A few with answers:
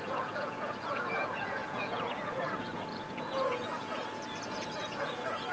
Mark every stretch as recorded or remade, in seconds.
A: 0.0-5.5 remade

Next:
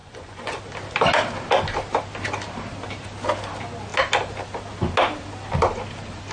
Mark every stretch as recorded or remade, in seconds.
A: 0.0-0.6 remade; 0.6-6.3 recorded

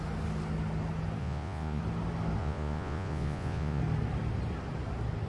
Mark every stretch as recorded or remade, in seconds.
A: 0.0-1.2 recorded; 1.2-1.8 remade; 1.8-2.4 recorded; 2.4-3.8 remade; 3.8-5.3 recorded

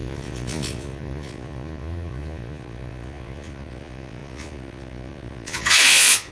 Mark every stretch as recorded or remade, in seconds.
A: 0.0-6.3 remade

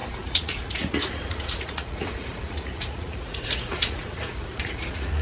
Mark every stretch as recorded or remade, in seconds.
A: 0.0-5.2 remade

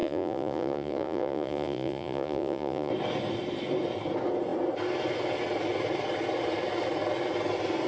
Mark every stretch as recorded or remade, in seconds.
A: 0.0-2.9 remade; 2.9-7.9 recorded

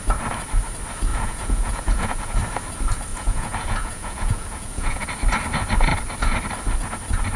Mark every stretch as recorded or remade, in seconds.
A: 0.0-1.1 recorded; 1.1-2.4 remade; 2.4-3.1 recorded; 3.1-5.1 remade; 5.1-7.4 recorded

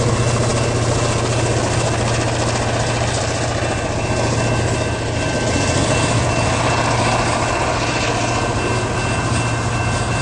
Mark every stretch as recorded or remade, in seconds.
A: 0.0-10.2 recorded